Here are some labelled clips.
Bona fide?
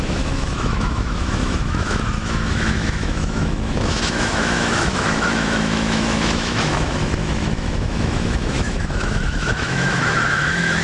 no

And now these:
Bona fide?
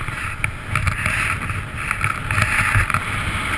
yes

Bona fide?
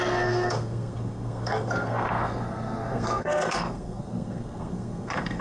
no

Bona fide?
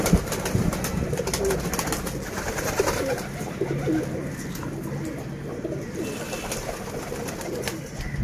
yes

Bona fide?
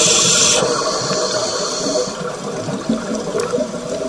no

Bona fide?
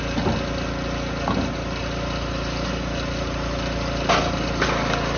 yes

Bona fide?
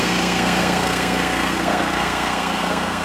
no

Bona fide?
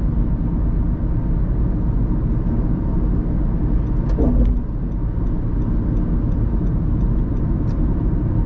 yes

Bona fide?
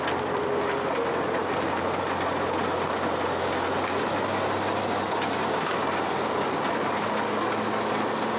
yes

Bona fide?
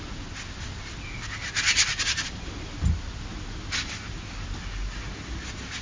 yes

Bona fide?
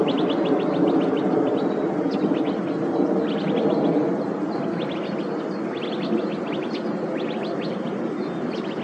yes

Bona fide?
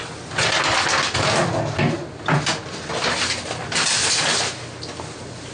yes